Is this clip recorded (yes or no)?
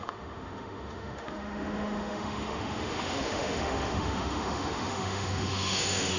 no